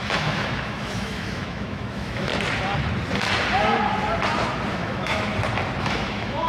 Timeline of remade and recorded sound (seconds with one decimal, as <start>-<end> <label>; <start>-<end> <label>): 0.0-2.3 remade; 2.3-4.7 recorded; 4.7-5.3 remade; 5.3-5.8 recorded; 5.8-6.5 remade